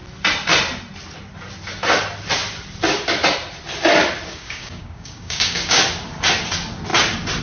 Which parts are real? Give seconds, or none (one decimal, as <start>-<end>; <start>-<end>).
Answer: 0.0-4.3; 5.8-7.4